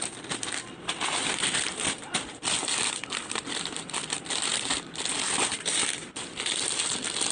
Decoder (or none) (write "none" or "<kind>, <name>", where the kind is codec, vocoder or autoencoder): none